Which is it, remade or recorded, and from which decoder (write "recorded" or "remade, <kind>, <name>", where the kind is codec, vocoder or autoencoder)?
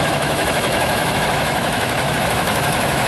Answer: remade, autoencoder, DAC-VAE